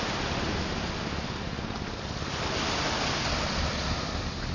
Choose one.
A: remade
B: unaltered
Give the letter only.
B